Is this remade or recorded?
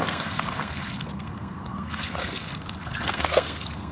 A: remade